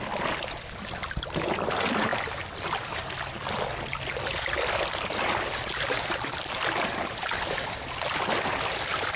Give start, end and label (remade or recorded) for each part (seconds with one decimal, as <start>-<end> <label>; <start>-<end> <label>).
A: 0.0-9.2 recorded